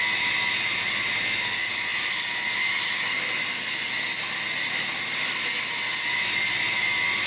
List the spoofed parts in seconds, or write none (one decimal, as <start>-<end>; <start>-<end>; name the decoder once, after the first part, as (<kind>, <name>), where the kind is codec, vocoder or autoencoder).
none